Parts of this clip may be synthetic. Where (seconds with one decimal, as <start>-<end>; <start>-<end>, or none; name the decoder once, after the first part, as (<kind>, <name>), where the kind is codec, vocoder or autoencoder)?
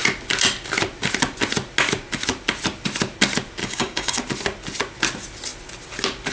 3.6-4.2 (codec, DAC)